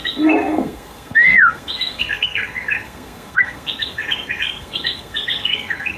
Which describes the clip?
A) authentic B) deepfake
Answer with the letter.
B